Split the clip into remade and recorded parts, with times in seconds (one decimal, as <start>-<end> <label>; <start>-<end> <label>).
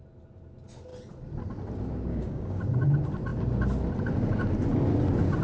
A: 0.0-2.1 recorded; 2.1-2.6 remade; 2.6-5.4 recorded